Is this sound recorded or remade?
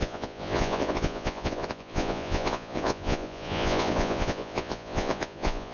remade